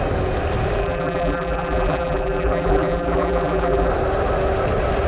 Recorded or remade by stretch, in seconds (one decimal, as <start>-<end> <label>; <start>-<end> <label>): 0.0-0.8 recorded; 0.8-3.9 remade; 3.9-5.1 recorded